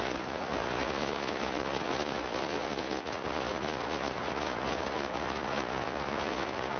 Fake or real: fake